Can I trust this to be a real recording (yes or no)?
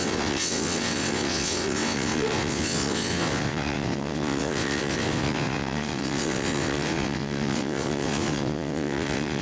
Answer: no